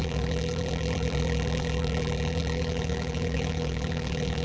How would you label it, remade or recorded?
remade